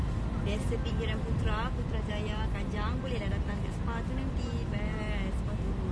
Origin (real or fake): real